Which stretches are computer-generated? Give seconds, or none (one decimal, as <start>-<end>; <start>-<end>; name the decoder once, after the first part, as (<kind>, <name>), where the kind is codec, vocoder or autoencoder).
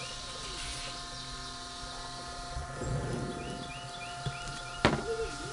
2.6-3.1 (vocoder, Vocos)